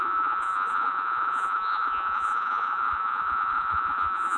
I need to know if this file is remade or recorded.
remade